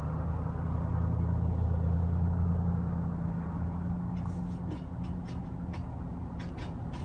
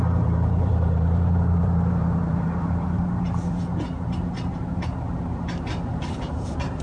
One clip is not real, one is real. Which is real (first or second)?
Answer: first